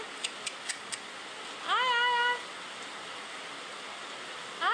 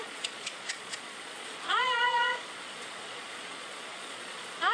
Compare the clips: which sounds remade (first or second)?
second